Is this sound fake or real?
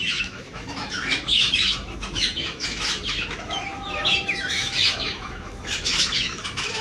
fake